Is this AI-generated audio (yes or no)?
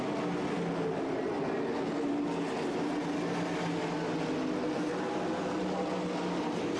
no